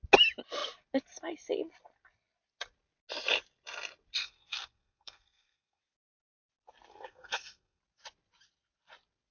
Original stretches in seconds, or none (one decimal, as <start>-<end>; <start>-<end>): 0.0-4.2; 5.8-6.9; 7.8-9.3